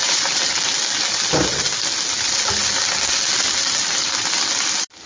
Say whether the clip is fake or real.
real